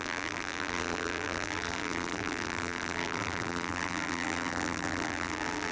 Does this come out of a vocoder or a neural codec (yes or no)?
yes